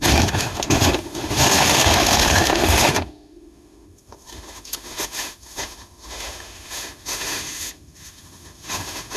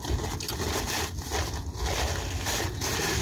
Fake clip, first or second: first